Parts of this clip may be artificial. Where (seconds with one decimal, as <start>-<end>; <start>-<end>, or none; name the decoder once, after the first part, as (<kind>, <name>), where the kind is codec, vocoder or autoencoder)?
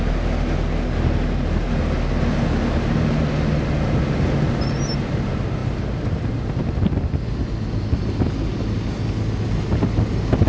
none